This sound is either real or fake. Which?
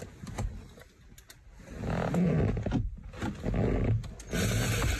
real